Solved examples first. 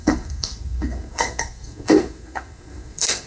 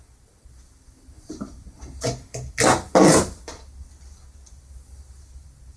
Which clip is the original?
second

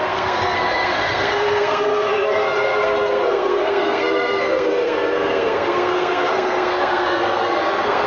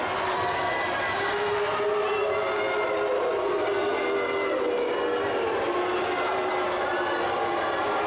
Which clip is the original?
second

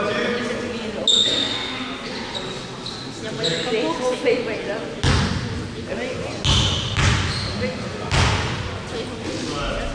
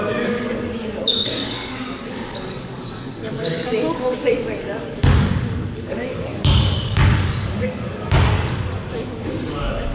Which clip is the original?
first